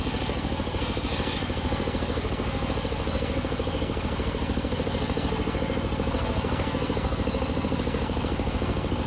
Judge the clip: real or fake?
fake